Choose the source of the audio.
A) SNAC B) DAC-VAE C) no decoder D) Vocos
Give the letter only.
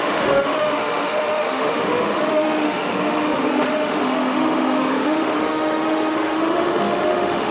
B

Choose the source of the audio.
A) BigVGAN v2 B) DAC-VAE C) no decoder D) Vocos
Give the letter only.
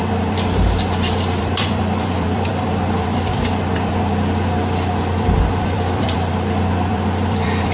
A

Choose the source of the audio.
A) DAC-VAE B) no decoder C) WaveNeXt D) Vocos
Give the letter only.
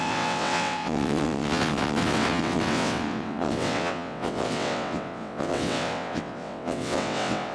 C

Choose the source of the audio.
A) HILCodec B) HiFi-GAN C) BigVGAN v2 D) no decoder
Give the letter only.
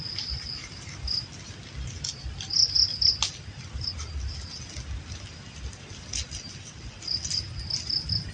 D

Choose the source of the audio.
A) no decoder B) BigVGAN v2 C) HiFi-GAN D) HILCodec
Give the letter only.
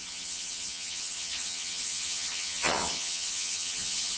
C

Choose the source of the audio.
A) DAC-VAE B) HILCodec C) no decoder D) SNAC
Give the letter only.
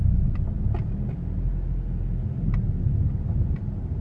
C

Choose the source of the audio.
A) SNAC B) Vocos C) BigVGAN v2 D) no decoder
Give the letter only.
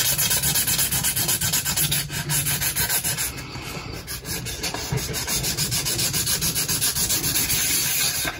D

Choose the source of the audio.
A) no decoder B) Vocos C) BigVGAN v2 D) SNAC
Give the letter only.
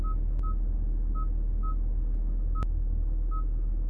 A